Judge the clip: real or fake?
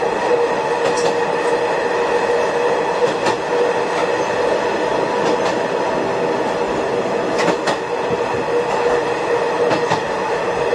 real